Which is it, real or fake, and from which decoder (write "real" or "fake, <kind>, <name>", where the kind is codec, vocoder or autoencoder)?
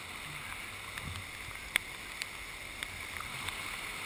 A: real